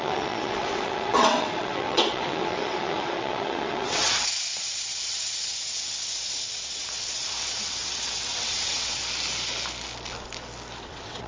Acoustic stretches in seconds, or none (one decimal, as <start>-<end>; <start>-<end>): 9.0-10.8